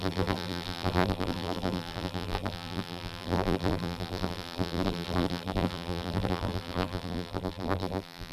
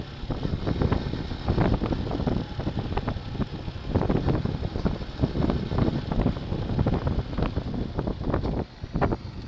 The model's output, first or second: first